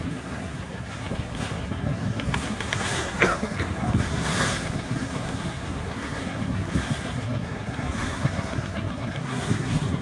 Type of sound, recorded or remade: remade